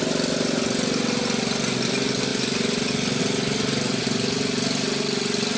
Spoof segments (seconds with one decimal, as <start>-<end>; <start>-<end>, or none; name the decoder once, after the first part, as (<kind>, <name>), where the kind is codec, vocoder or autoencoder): none